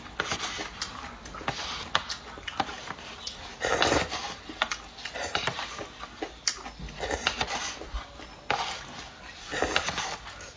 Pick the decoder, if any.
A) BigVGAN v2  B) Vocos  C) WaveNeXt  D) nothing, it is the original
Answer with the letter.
D